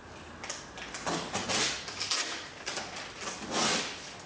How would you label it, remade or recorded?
recorded